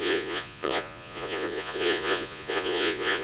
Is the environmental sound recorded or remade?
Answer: remade